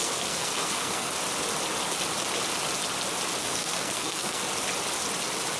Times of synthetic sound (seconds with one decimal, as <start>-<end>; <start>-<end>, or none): 0.0-1.1; 3.4-4.4